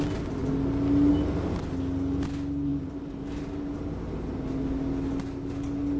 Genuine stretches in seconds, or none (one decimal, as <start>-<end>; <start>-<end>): 0.0-6.0